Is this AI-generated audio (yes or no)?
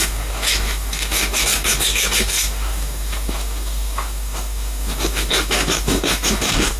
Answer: yes